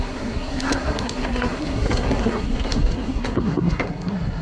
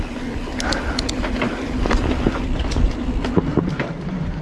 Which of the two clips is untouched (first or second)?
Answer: second